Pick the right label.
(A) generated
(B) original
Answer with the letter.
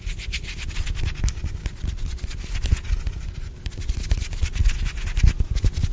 B